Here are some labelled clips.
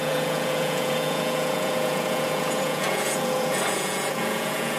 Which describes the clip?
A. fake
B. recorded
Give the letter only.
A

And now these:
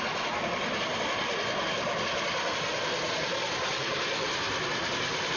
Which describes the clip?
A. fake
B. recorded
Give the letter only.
B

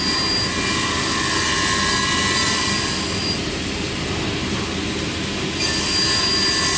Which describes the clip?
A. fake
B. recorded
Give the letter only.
B